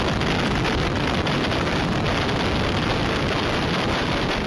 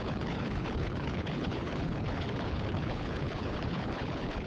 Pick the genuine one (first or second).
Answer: first